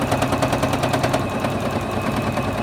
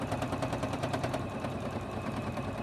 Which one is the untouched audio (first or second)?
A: first